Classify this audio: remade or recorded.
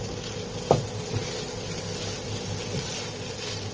recorded